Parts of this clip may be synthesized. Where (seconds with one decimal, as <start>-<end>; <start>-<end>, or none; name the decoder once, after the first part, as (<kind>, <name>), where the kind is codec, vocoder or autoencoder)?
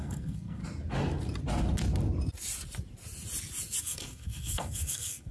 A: 0.0-0.6 (codec, SNAC); 3.8-5.3